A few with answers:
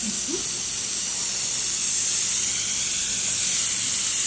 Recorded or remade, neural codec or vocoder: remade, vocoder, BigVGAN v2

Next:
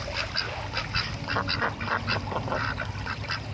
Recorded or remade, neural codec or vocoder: recorded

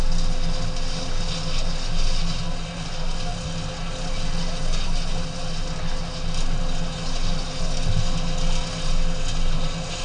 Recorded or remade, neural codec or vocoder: recorded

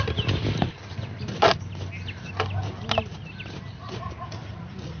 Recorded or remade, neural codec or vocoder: recorded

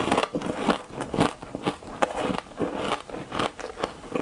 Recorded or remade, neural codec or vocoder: recorded